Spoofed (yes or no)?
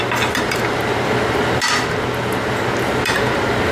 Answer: no